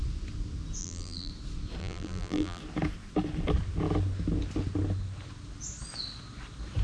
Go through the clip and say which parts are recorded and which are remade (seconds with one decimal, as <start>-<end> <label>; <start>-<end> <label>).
0.0-0.8 recorded; 0.8-1.3 remade; 1.3-1.8 recorded; 1.8-2.6 remade; 2.6-6.8 recorded